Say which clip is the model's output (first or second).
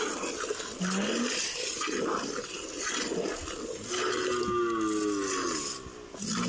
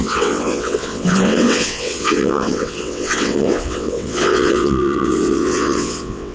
second